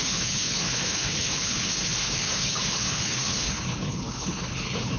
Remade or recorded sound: remade